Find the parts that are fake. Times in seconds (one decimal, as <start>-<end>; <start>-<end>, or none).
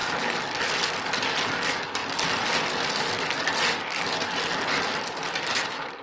none